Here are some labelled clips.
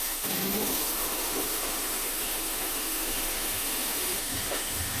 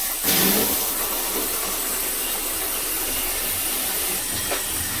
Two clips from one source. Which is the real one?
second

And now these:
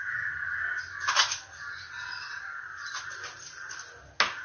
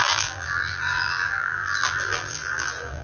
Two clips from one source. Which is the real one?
first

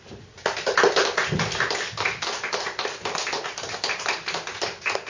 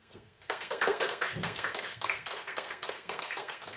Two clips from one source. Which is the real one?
first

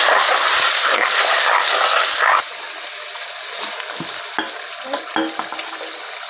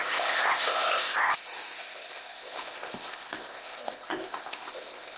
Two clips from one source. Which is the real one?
first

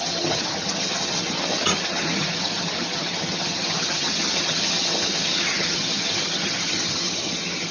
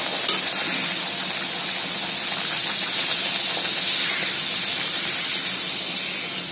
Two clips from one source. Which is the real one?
second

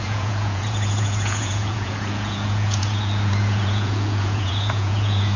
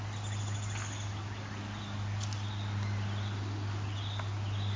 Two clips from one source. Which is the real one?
second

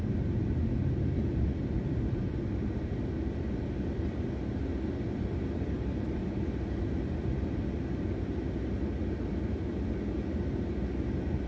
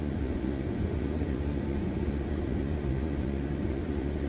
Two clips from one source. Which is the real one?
first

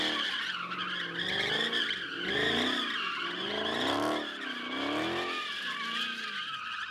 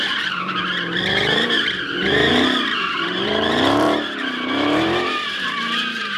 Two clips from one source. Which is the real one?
first